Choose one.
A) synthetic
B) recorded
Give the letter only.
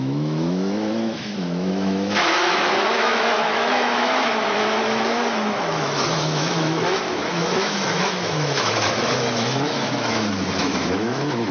A